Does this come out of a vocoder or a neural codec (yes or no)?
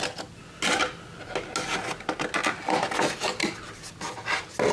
no